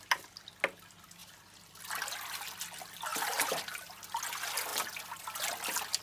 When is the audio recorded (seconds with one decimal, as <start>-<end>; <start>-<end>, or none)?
0.0-6.0